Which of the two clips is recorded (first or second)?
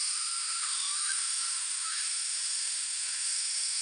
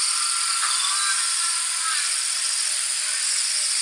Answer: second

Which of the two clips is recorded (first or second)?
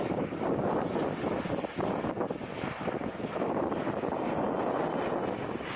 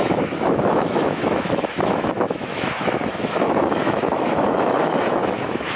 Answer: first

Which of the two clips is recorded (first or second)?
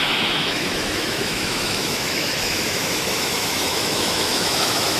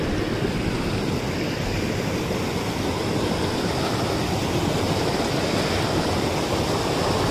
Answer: second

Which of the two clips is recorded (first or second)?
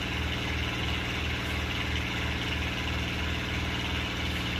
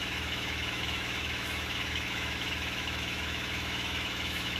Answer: first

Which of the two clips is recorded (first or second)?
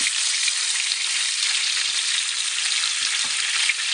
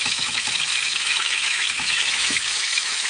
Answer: first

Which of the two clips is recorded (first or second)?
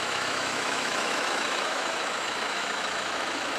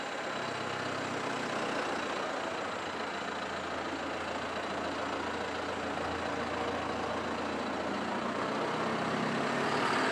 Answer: second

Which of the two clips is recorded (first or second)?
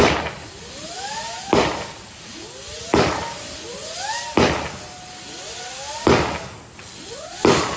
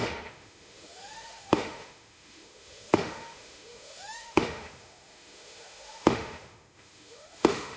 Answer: first